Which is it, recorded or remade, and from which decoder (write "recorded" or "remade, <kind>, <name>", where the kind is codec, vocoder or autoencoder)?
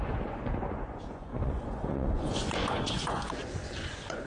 remade, vocoder, Vocos